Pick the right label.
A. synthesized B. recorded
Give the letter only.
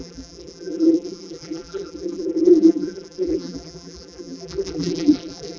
A